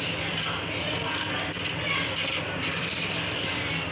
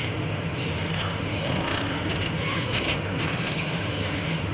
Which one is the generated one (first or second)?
second